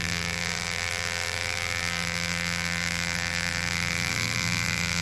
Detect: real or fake fake